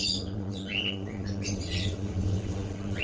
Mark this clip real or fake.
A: fake